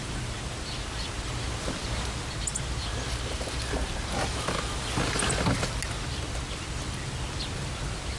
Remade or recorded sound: recorded